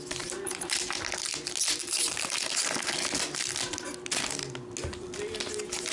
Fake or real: real